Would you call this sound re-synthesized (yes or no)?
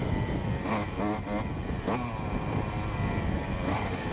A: no